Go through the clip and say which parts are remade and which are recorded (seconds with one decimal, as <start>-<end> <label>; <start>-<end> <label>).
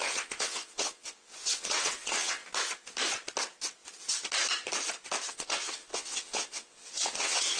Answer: 0.0-2.4 remade; 2.4-5.3 recorded; 5.3-7.6 remade